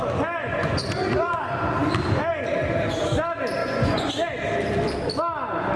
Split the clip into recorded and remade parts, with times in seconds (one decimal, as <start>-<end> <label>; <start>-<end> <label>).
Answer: 0.0-0.4 recorded; 0.4-1.4 remade; 1.4-3.6 recorded; 3.6-4.1 remade; 4.1-5.8 recorded

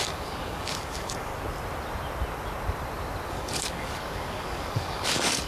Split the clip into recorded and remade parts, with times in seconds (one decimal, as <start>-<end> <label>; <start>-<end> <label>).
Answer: 0.0-1.3 remade; 1.3-3.3 recorded; 3.3-5.5 remade

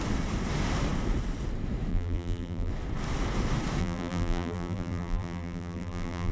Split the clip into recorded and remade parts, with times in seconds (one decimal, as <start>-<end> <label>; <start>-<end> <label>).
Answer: 0.0-1.9 recorded; 1.9-2.7 remade; 2.7-3.8 recorded; 3.8-6.3 remade

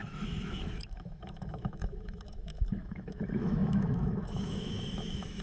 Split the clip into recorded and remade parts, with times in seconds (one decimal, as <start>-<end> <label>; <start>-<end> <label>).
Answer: 0.0-5.4 remade

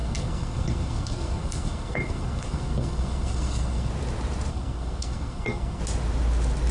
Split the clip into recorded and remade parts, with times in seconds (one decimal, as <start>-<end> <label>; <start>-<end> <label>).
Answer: 0.0-3.9 remade; 3.9-4.5 recorded; 4.5-5.8 remade; 5.8-6.7 recorded

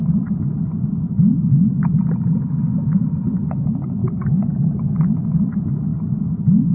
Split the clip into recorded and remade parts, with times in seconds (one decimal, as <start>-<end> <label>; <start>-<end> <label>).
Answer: 0.0-4.0 recorded; 4.0-4.5 remade; 4.5-6.7 recorded

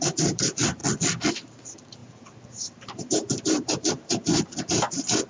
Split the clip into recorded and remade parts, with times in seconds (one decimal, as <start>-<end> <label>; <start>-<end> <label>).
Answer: 0.0-0.8 remade; 0.8-1.3 recorded; 1.3-5.3 remade